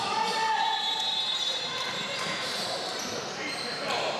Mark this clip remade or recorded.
remade